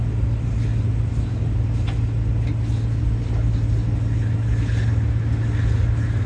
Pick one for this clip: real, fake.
real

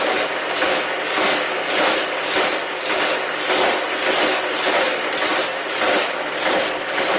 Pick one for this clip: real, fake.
real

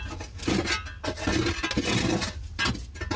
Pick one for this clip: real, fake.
real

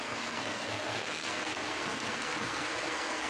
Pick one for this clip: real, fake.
fake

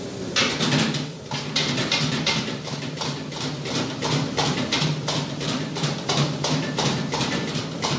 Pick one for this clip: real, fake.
fake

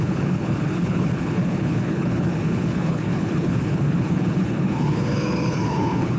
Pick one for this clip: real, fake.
fake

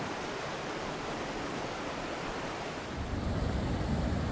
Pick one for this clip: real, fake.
real